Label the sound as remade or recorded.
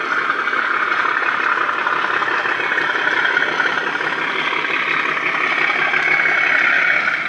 recorded